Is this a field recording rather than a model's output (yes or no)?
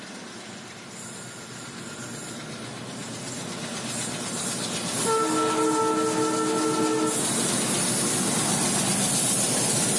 yes